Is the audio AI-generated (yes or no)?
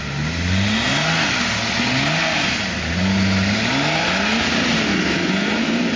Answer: no